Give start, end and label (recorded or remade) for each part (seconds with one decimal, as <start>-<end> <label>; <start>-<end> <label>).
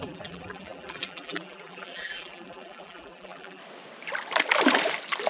0.0-3.6 remade; 3.6-5.3 recorded